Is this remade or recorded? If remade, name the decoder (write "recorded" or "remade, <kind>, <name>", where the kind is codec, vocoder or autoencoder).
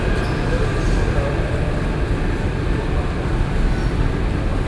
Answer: recorded